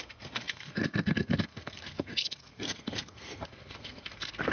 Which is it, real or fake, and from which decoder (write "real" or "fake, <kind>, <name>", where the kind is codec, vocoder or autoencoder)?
fake, codec, SNAC